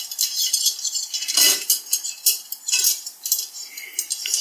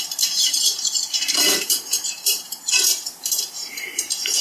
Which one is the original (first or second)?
first